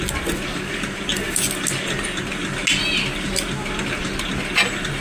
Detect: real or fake real